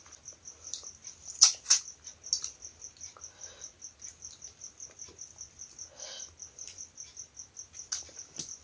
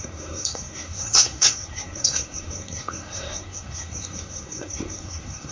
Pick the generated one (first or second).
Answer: second